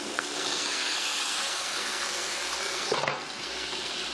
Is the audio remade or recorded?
remade